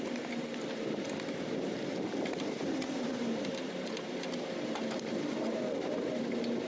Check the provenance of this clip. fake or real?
real